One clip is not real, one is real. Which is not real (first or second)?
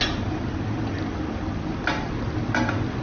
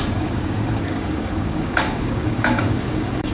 second